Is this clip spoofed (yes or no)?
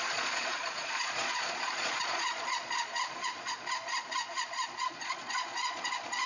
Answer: yes